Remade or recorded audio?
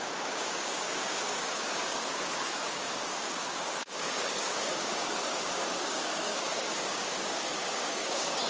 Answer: remade